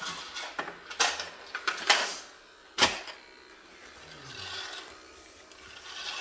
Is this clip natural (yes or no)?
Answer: yes